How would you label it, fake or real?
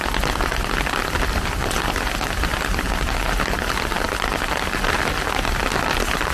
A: real